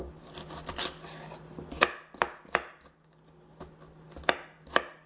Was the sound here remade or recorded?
recorded